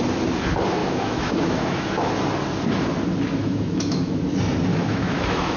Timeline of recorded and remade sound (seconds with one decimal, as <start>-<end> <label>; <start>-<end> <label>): 0.0-0.8 recorded; 0.8-2.1 remade; 2.1-3.4 recorded; 3.4-4.2 remade; 4.2-4.7 recorded; 4.7-5.6 remade